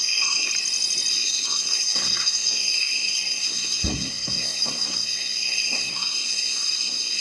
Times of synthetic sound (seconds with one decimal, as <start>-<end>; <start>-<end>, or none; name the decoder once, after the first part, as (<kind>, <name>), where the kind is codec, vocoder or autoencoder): 0.0-0.5 (codec, SNAC); 1.1-7.2